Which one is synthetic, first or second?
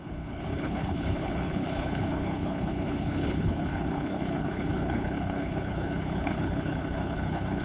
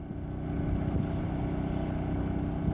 first